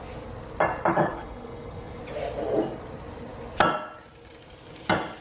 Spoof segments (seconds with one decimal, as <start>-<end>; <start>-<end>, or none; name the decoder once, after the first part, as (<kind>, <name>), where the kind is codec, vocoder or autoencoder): 0.9-2.0 (codec, HILCodec)